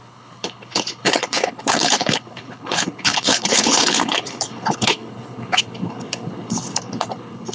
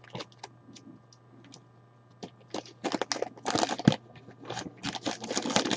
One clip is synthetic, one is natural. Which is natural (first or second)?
second